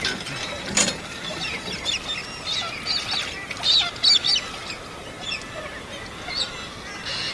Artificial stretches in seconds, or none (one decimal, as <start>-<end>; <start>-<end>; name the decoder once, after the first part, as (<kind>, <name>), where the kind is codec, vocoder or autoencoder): none